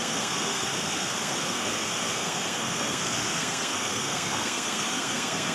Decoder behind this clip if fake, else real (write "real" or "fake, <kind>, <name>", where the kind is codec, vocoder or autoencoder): fake, codec, SNAC